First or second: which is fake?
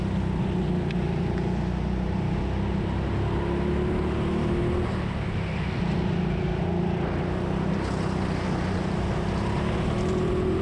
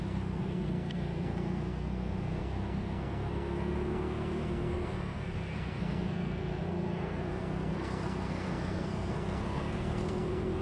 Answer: second